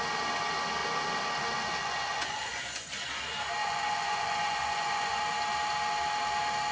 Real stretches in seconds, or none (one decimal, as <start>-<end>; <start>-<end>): 0.0-1.8; 2.9-3.6; 5.2-6.7